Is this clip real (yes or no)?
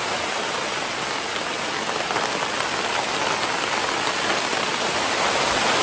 yes